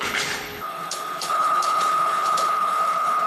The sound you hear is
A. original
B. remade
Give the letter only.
B